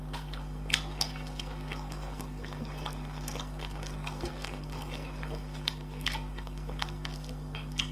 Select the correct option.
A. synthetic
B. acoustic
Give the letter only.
A